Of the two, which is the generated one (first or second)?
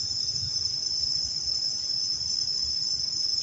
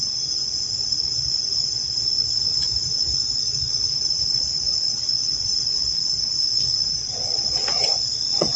second